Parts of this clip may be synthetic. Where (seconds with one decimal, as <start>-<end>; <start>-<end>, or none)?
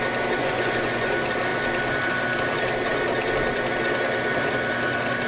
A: 0.4-1.1